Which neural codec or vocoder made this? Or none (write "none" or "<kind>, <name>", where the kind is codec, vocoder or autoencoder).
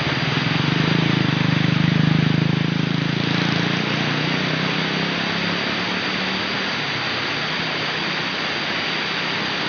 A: none